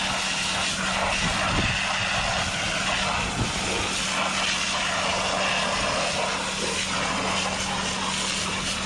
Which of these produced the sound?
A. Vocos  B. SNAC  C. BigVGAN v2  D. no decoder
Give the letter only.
D